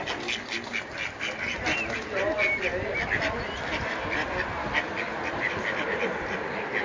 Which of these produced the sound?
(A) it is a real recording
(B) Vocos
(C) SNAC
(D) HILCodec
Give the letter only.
A